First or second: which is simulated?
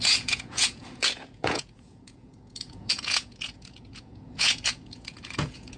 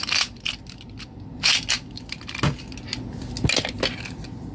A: first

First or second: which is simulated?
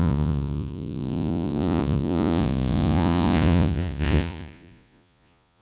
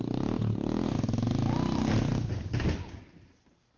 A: first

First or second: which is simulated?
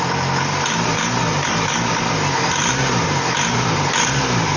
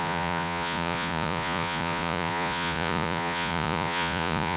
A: second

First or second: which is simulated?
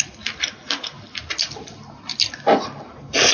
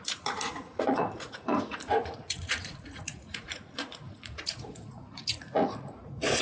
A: second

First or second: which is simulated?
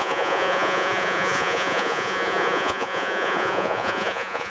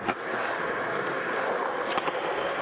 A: first